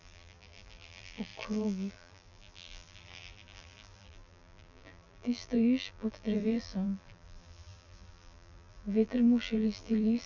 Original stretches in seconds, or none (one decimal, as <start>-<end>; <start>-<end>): none